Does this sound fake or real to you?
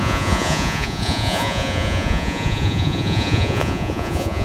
fake